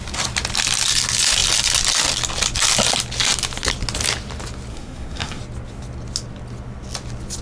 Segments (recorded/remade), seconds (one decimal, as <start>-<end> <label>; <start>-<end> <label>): 0.0-4.7 recorded; 4.7-5.4 remade; 5.4-7.4 recorded